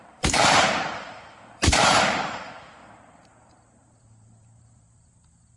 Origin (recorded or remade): remade